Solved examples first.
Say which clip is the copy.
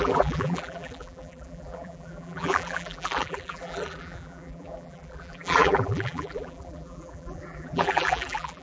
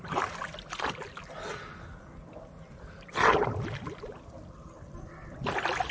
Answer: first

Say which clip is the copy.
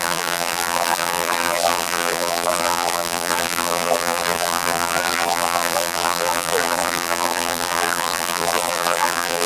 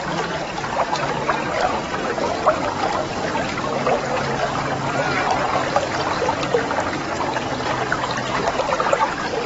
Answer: first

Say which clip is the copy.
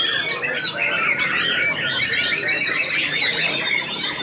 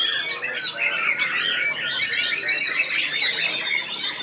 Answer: first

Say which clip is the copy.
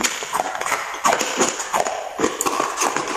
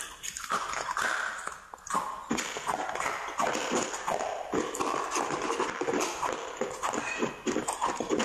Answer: first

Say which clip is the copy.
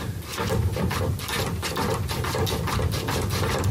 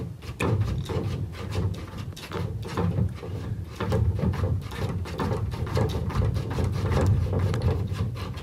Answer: second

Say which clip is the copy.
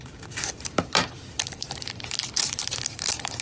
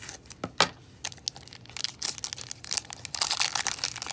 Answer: first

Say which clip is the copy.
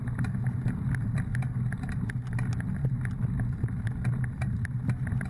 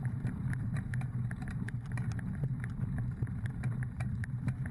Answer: second